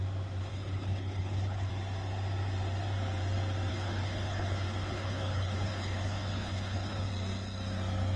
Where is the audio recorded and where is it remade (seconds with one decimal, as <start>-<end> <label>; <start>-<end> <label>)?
0.0-0.5 recorded; 0.5-1.7 remade; 1.7-3.7 recorded; 3.7-7.1 remade; 7.1-8.2 recorded